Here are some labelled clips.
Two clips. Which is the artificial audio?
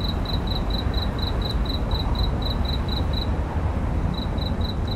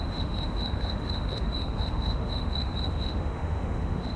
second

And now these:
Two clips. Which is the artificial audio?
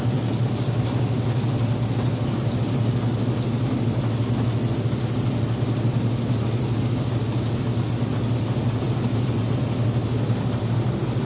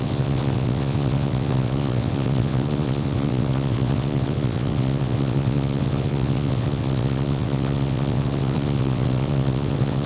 second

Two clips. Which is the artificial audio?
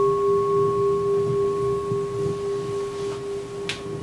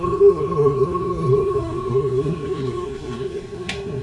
second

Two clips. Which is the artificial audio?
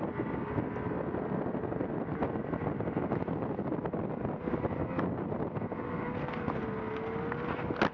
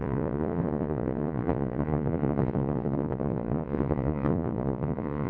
second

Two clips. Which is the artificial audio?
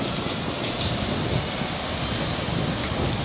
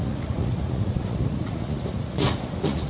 second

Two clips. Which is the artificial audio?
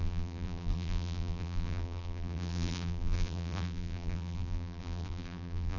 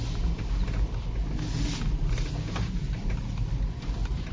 first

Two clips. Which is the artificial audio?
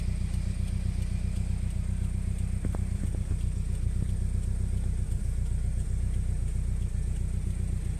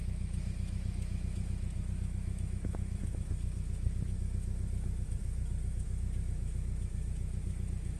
second